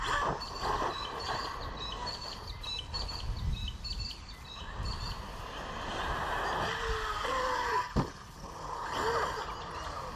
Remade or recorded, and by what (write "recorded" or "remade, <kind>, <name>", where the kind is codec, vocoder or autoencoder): recorded